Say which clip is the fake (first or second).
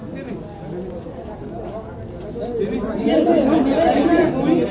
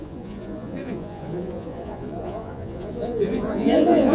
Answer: second